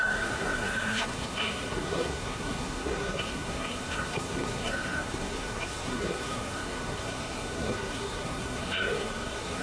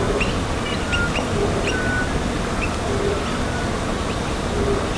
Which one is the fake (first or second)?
first